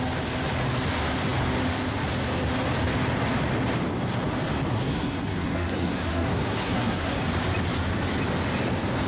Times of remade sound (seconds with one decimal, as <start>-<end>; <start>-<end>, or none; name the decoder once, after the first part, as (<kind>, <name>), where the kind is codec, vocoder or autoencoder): 4.7-7.2 (codec, SNAC)